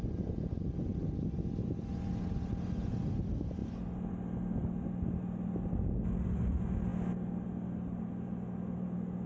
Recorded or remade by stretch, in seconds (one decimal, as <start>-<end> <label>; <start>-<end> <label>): 0.0-9.3 recorded